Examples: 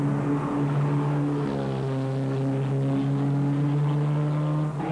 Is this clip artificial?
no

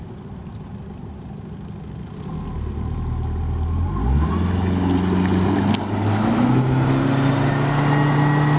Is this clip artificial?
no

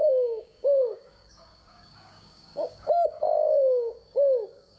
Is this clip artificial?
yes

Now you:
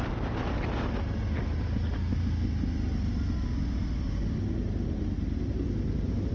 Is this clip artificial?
no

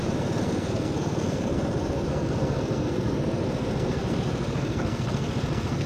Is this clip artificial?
yes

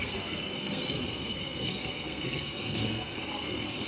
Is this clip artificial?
yes